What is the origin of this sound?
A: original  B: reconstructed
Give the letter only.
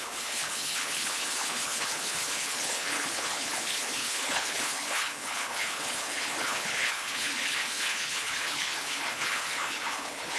B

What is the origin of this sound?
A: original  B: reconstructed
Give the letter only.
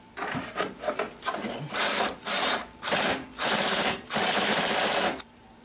B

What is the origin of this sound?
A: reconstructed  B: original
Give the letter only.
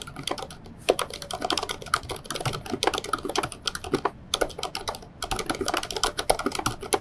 B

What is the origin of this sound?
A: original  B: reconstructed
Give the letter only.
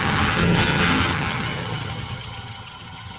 B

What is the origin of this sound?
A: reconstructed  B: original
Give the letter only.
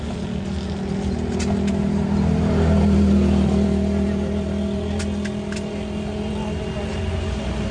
B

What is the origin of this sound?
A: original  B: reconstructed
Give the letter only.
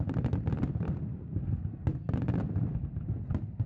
A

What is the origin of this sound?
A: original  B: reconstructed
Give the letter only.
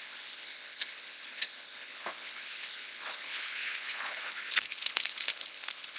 B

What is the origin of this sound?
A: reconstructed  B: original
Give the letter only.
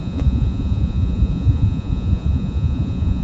A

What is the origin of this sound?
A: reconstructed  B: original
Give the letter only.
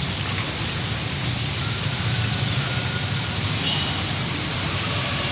B